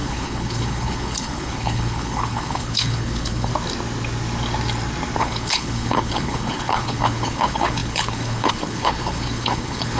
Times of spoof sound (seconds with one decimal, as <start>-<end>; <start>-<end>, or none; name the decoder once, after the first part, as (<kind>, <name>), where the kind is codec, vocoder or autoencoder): 0.0-3.5 (codec, HILCodec); 5.2-10.0